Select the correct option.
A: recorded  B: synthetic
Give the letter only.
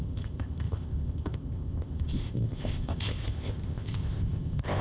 B